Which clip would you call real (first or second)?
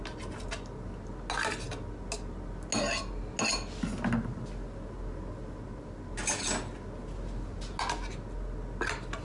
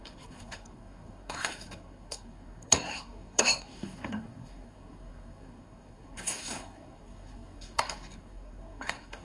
first